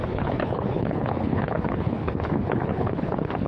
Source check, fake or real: fake